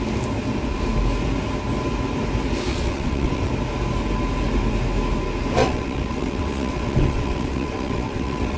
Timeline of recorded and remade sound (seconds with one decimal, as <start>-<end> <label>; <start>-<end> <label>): 0.0-2.7 recorded; 2.7-3.5 remade; 3.5-5.6 recorded; 5.6-8.6 remade